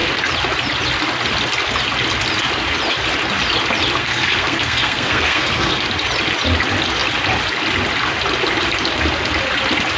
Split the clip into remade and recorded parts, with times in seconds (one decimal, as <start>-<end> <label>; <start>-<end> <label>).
0.0-4.0 recorded; 4.0-5.8 remade; 5.8-10.0 recorded

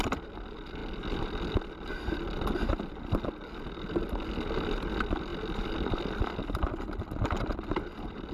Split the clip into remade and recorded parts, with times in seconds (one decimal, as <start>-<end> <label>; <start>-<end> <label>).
0.0-8.3 recorded

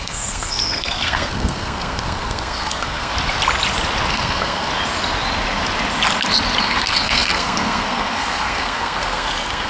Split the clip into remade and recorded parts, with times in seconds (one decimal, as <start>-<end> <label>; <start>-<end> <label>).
0.0-3.1 remade; 3.1-4.1 recorded; 4.1-4.7 remade; 4.7-6.6 recorded; 6.6-9.7 remade

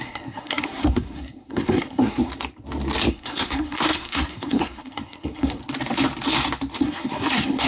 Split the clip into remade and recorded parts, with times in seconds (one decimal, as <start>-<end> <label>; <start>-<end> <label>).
0.0-2.3 remade; 2.3-3.1 recorded; 3.1-5.6 remade; 5.6-6.8 recorded; 6.8-7.7 remade

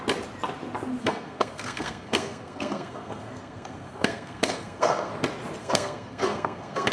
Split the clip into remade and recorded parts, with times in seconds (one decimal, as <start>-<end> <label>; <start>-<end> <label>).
0.0-1.0 recorded; 1.0-5.1 remade; 5.1-5.6 recorded; 5.6-6.9 remade

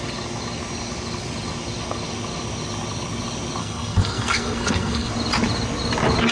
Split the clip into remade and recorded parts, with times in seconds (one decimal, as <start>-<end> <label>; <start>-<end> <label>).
0.0-3.6 recorded; 3.6-5.1 remade; 5.1-6.3 recorded

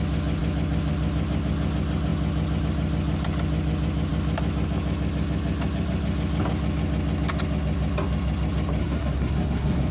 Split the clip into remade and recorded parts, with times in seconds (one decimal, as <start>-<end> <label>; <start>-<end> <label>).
0.0-8.8 recorded; 8.8-9.9 remade